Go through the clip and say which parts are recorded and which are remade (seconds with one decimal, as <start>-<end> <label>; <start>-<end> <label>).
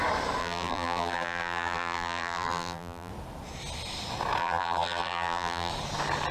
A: 0.0-0.4 recorded; 0.4-3.1 remade; 3.1-4.4 recorded; 4.4-5.7 remade; 5.7-6.3 recorded